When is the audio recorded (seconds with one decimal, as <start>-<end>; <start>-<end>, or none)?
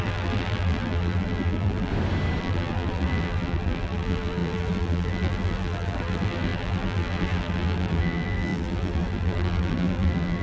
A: 1.9-2.4